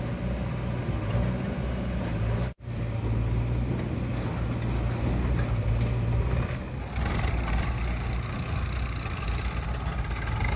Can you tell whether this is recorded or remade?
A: recorded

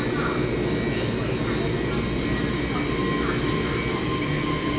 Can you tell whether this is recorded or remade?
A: recorded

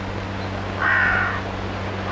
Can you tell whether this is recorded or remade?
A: recorded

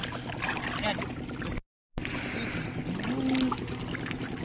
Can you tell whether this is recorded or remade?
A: recorded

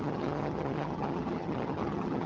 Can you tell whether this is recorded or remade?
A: remade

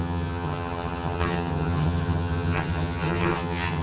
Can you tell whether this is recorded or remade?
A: remade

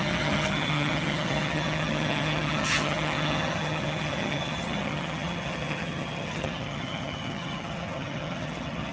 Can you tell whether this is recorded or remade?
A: remade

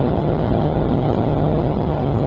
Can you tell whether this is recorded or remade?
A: remade